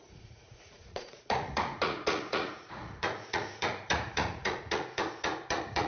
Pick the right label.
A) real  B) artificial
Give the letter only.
B